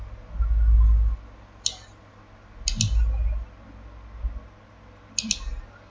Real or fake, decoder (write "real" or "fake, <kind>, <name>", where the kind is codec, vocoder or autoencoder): real